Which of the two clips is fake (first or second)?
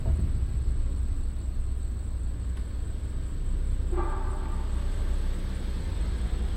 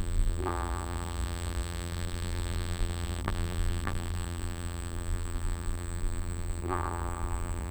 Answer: second